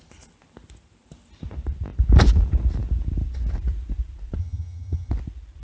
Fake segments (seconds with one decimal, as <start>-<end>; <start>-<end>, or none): 4.4-5.1